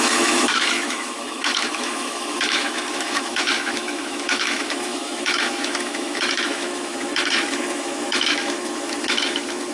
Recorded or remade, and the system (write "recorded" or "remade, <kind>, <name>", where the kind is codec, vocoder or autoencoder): remade, autoencoder, DAC-VAE